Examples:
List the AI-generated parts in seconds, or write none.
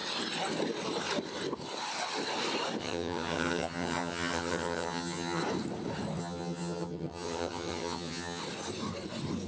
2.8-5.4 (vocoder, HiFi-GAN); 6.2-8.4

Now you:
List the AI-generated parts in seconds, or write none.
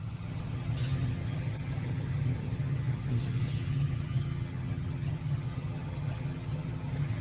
0.0-7.2 (vocoder, HiFi-GAN)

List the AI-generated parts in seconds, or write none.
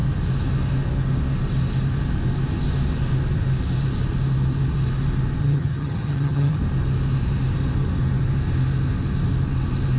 5.4-6.6 (vocoder, HiFi-GAN)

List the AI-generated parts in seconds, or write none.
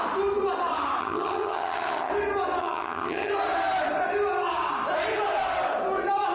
1.0-2.1 (vocoder, HiFi-GAN); 2.6-3.3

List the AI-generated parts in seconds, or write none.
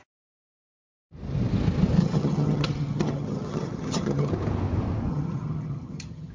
2.0-4.3 (vocoder, HiFi-GAN); 5.1-6.3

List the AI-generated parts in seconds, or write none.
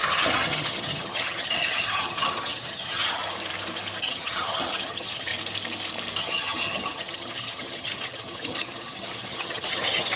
0.0-3.2 (vocoder, HiFi-GAN); 4.0-5.3; 6.2-10.2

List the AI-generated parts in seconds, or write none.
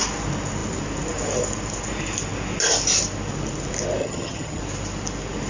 4.0-4.6 (vocoder, HiFi-GAN)